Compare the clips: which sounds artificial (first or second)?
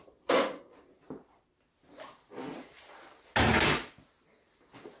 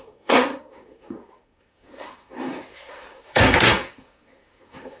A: second